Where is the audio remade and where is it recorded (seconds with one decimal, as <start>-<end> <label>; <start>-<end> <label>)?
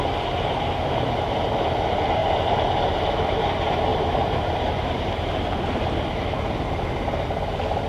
0.0-2.2 recorded; 2.2-3.4 remade; 3.4-3.9 recorded; 3.9-5.1 remade; 5.1-7.9 recorded